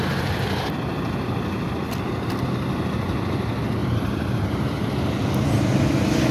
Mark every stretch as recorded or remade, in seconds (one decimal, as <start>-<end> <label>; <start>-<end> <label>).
0.0-3.8 recorded; 3.8-4.9 remade; 4.9-6.3 recorded